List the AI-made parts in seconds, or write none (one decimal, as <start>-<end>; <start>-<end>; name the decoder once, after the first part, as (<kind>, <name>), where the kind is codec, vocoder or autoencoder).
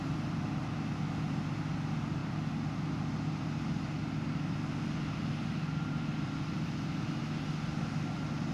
none